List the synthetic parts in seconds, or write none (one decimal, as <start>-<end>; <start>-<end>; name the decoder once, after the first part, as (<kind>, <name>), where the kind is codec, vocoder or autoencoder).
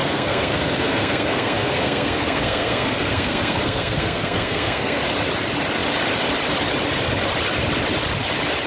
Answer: 0.0-5.0 (codec, SNAC)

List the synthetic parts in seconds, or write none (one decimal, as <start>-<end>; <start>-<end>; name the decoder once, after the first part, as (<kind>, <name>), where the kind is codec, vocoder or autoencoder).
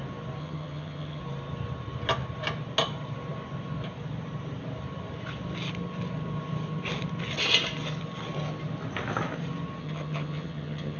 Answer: 0.4-1.2 (vocoder, HiFi-GAN); 9.8-11.0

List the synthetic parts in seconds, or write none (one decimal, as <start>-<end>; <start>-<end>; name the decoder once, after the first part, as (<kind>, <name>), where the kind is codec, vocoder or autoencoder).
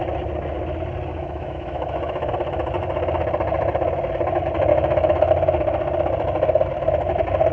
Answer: 1.1-2.3 (autoencoder, DAC-VAE); 4.7-5.3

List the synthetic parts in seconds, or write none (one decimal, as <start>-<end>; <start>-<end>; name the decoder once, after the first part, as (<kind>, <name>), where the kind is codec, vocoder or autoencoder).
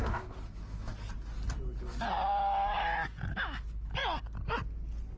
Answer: 0.0-0.9 (autoencoder, DAC-VAE); 3.3-4.0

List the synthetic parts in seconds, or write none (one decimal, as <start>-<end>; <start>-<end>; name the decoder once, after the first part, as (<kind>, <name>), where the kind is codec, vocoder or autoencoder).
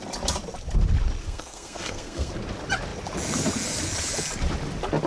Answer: 1.2-2.3 (codec, SNAC)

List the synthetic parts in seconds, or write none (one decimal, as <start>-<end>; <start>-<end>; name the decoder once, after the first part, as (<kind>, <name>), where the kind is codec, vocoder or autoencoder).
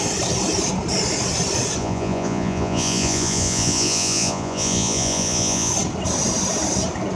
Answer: 1.8-5.7 (vocoder, Vocos)